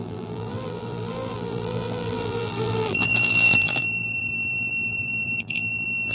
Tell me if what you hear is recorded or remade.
remade